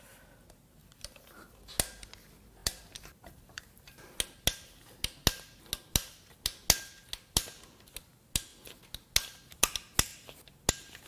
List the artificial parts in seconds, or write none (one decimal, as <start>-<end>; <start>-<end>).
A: 0.8-1.7; 2.6-3.6